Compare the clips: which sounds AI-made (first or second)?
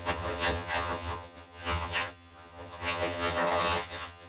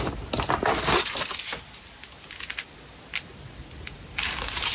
first